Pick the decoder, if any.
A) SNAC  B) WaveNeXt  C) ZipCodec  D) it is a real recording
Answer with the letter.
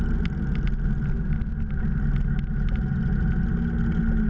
D